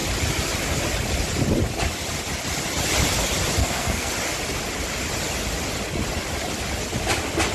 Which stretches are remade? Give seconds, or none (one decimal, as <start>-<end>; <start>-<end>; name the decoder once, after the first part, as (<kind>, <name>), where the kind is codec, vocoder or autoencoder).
3.6-4.1 (codec, SNAC)